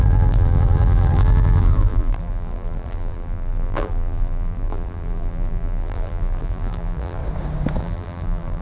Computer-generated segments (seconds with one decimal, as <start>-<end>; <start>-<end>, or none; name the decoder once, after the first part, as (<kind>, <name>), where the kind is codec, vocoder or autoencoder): 0.0-7.2 (vocoder, BigVGAN v2); 7.8-8.6